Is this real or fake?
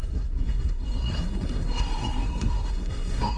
fake